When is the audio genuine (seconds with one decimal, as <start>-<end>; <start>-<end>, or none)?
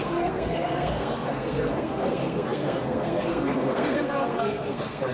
none